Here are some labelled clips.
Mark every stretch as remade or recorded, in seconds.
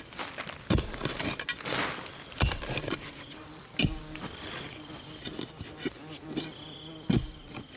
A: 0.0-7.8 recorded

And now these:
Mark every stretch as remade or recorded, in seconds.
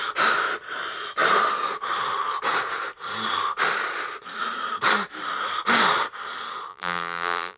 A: 0.0-6.7 recorded; 6.7-7.6 remade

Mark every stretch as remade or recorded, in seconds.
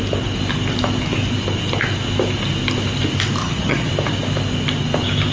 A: 0.0-3.4 recorded; 3.4-3.9 remade; 3.9-5.3 recorded